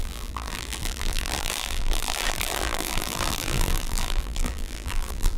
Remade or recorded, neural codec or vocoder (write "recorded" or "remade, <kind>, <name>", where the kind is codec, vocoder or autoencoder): remade, vocoder, BigVGAN v2